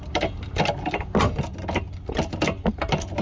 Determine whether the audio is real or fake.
real